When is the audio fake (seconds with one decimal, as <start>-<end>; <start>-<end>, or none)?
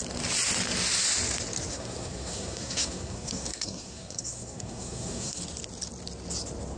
1.7-5.4